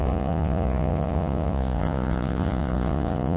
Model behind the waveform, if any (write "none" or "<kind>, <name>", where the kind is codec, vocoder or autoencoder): vocoder, Vocos